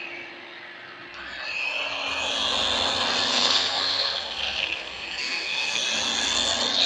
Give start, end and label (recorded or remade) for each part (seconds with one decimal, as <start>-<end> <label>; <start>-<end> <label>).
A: 0.0-3.3 recorded; 3.3-5.8 remade; 5.8-6.9 recorded

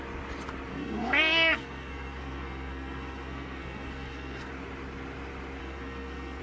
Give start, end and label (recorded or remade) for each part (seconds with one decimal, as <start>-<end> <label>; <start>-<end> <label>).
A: 0.0-0.7 recorded; 0.7-4.5 remade; 4.5-5.6 recorded; 5.6-6.4 remade

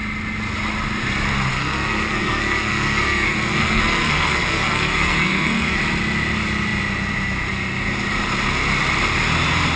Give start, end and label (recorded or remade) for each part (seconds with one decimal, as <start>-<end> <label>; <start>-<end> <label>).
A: 0.0-1.5 recorded; 1.5-5.8 remade; 5.8-9.8 recorded